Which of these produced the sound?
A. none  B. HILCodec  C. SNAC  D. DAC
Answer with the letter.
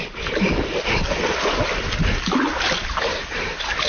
A